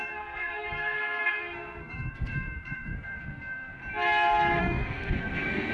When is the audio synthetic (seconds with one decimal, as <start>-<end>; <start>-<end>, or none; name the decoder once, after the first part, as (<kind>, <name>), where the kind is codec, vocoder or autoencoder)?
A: 0.0-3.8 (codec, SNAC); 4.6-5.7

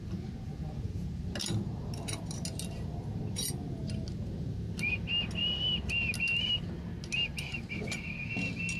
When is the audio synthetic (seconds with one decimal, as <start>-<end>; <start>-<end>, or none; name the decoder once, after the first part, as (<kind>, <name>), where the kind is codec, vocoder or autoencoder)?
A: none